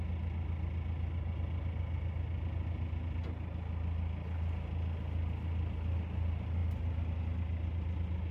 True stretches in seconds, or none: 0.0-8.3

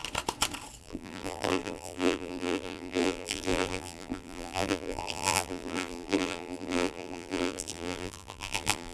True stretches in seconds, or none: 0.0-0.8

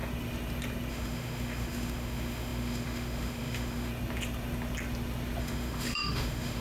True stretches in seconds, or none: 0.0-0.9; 3.9-5.4

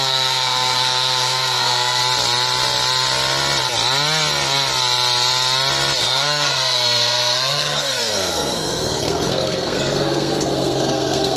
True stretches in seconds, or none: 2.0-6.0

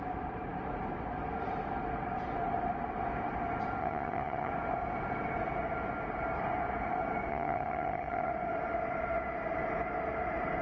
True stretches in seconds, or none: 0.0-3.8; 4.5-7.3; 8.3-10.6

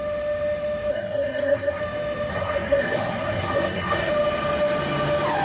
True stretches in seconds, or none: 0.0-0.9; 1.8-2.3; 4.1-5.4